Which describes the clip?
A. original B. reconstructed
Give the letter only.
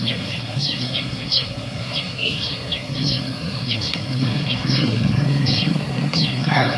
B